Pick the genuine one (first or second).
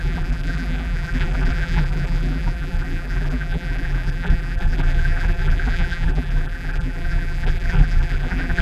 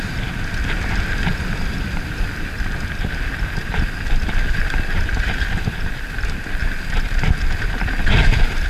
second